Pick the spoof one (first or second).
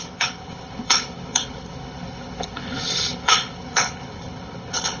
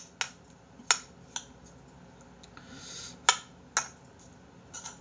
first